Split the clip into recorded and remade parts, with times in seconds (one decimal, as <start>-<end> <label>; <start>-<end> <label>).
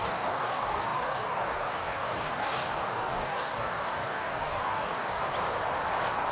0.0-5.2 remade; 5.2-6.3 recorded